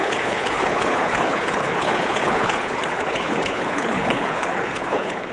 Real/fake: fake